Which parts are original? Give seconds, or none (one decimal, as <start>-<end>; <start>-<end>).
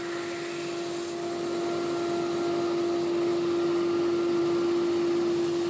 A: 0.0-5.7